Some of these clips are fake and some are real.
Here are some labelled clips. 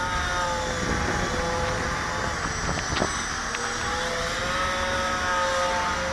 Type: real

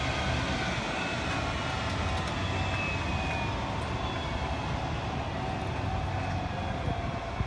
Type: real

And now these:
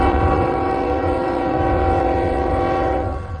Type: fake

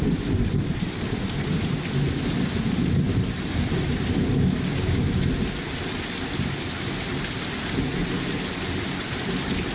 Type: real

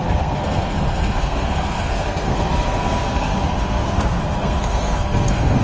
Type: fake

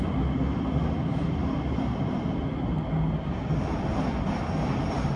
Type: real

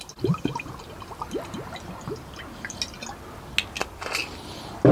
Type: real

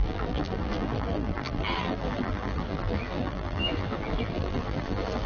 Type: fake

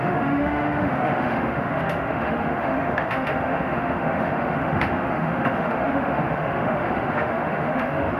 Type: fake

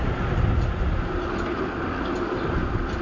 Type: real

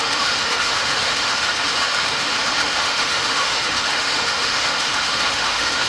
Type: fake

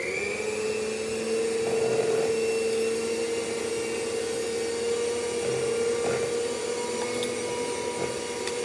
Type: real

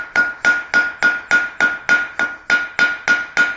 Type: real